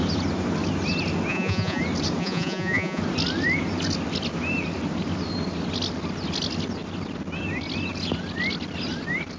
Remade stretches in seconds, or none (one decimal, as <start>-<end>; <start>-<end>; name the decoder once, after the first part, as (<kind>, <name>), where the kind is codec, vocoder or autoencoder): 1.3-1.8 (vocoder, Vocos); 2.2-3.0